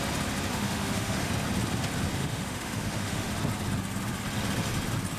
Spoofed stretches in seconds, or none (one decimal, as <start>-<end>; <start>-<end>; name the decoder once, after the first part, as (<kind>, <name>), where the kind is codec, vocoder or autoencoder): 0.5-1.3 (autoencoder, DAC-VAE); 2.2-3.3